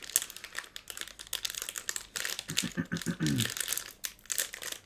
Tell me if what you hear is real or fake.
real